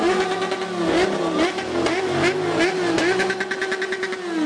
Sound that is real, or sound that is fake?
real